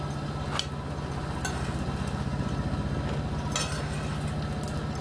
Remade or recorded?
recorded